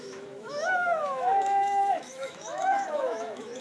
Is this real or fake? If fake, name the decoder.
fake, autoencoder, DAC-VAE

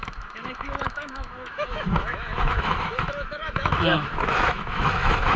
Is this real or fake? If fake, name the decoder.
fake, autoencoder, DAC-VAE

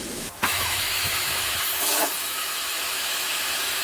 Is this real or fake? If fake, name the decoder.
fake, autoencoder, DAC-VAE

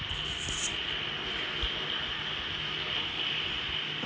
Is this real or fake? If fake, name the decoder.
real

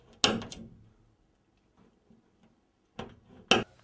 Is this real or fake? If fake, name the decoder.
real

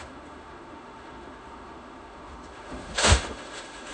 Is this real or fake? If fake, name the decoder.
fake, autoencoder, DAC-VAE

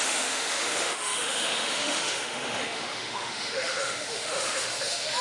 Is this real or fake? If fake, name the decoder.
fake, autoencoder, DAC-VAE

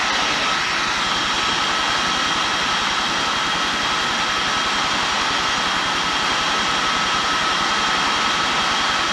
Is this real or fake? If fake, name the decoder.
real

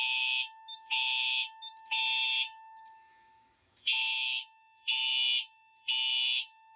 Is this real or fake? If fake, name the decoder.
fake, autoencoder, DAC-VAE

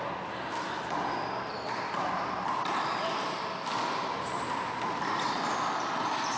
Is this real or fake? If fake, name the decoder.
real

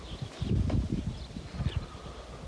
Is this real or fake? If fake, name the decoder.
real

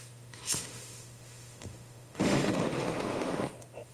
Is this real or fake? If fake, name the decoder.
fake, autoencoder, DAC-VAE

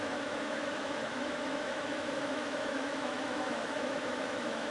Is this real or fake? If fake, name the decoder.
fake, autoencoder, DAC-VAE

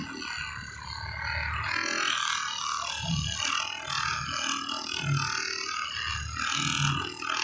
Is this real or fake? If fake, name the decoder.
real